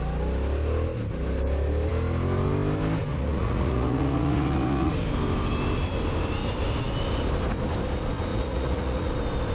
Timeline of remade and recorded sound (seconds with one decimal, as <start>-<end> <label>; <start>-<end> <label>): 0.0-3.1 recorded; 3.1-4.9 remade; 4.9-8.3 recorded; 8.3-9.1 remade; 9.1-9.5 recorded